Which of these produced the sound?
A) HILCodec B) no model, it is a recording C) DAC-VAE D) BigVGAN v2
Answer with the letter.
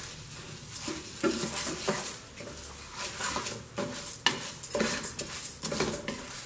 B